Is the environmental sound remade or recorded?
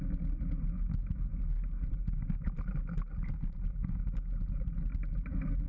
recorded